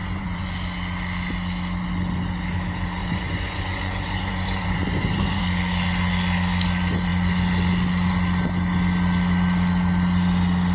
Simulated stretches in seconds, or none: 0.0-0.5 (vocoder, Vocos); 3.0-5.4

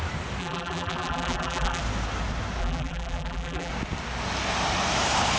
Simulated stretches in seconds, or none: 0.4-1.8 (vocoder, BigVGAN v2); 2.6-3.7

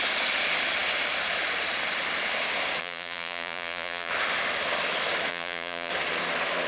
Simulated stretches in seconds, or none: 2.8-4.1 (vocoder, Vocos); 5.3-5.9

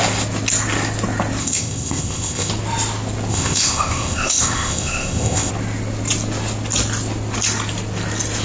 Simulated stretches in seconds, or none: 1.4-2.5 (codec, ZipCodec); 3.3-5.5

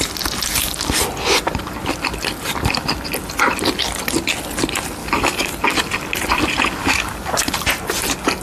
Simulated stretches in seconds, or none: 5.0-5.5 (codec, DAC); 6.8-7.5

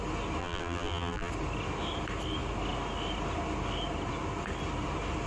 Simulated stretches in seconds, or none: 0.4-1.3 (vocoder, BigVGAN v2)

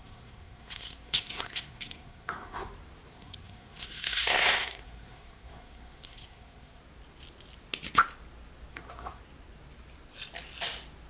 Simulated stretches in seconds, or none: 0.0-2.7 (codec, SNAC); 3.1-6.8; 8.7-9.2

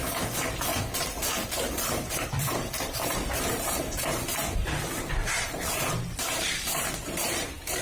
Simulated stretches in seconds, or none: 0.0-7.8 (vocoder, BigVGAN v2)